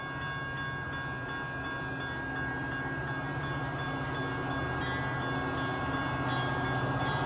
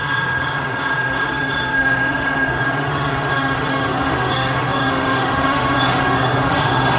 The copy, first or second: second